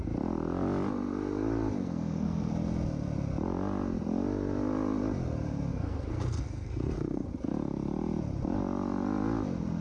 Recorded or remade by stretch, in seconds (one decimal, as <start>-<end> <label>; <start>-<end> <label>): 0.0-1.8 recorded; 1.8-2.5 remade; 2.5-5.7 recorded; 5.7-7.3 remade; 7.3-9.8 recorded